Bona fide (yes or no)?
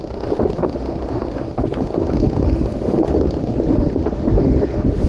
no